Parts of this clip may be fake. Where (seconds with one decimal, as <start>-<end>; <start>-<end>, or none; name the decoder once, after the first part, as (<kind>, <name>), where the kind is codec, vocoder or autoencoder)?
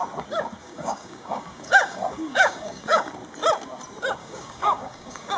0.6-3.1 (codec, DAC); 4.2-5.4